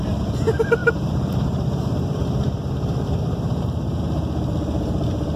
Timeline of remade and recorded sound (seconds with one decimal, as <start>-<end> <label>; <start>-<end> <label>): 0.0-0.8 recorded; 0.8-4.0 remade; 4.0-5.4 recorded